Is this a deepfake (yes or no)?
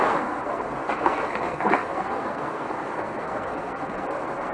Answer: yes